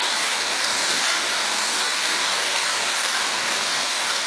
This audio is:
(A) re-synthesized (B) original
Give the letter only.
A